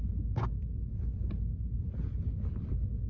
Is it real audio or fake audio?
real